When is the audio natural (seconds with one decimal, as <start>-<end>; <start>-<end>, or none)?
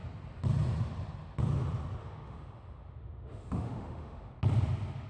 0.0-2.0; 4.3-5.1